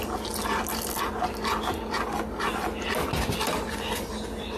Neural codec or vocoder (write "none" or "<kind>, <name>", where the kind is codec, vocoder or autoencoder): none